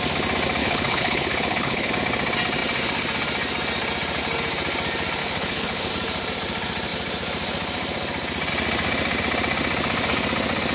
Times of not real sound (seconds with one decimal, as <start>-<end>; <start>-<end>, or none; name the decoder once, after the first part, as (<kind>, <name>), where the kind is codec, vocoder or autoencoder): 0.6-1.9 (codec, HILCodec); 5.2-5.9